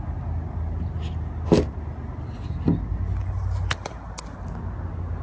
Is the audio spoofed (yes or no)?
no